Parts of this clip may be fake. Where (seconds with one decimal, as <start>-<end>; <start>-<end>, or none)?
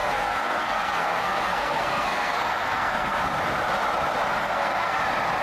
0.0-3.2; 4.4-5.0